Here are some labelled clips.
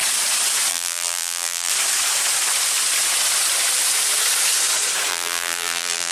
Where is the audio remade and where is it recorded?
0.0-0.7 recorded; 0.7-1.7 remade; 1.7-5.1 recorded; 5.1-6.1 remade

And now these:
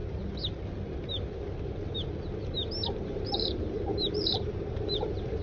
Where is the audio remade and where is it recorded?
0.0-3.2 recorded; 3.2-5.4 remade

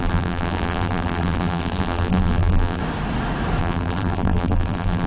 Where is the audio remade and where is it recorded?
0.0-2.8 remade; 2.8-3.6 recorded; 3.6-5.1 remade

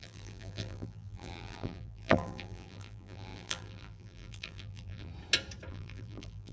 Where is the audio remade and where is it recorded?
0.0-5.1 remade; 5.1-5.7 recorded; 5.7-6.5 remade